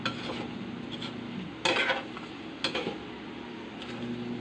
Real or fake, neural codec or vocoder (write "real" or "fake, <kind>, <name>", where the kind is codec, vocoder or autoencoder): real